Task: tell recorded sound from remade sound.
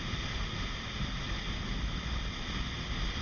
recorded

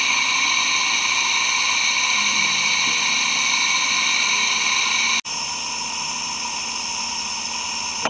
recorded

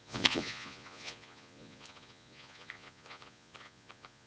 remade